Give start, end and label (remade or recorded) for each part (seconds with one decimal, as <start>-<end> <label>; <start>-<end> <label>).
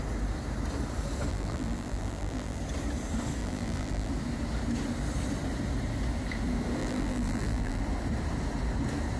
0.0-1.3 recorded; 1.3-2.6 remade; 2.6-3.4 recorded; 3.4-4.1 remade; 4.1-6.8 recorded; 6.8-7.8 remade; 7.8-9.2 recorded